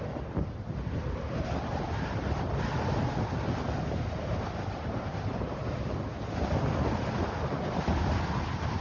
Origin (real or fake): real